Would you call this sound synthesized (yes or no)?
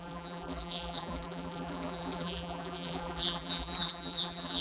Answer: yes